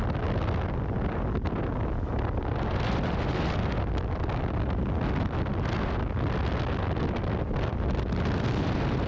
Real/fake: real